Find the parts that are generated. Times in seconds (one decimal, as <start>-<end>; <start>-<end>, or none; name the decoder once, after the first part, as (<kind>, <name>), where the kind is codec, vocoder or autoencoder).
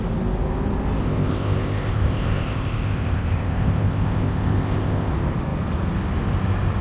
1.0-5.1 (codec, ZipCodec)